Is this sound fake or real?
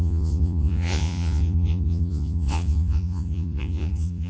fake